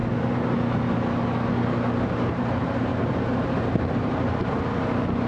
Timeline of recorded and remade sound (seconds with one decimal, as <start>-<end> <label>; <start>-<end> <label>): 0.0-1.9 recorded; 1.9-2.9 remade; 2.9-3.6 recorded; 3.6-5.3 remade